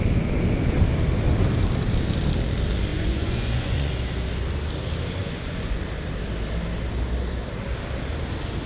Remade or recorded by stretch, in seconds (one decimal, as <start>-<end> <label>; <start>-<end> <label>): 0.0-2.9 recorded; 2.9-3.9 remade; 3.9-5.2 recorded; 5.2-5.8 remade; 5.8-8.7 recorded